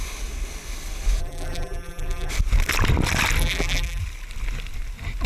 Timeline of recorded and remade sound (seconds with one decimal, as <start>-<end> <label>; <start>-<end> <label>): 0.0-1.2 recorded; 1.2-2.3 remade; 2.3-3.4 recorded; 3.4-4.0 remade; 4.0-5.3 recorded